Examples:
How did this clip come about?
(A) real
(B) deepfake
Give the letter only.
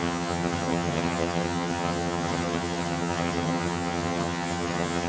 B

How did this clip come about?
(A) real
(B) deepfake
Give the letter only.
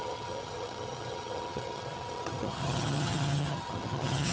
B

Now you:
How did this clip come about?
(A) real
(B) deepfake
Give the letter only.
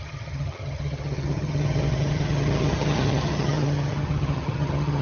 B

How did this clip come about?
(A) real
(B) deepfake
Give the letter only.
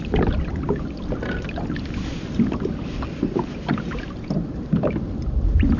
A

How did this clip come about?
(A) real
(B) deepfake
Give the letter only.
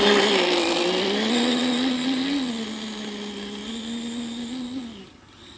A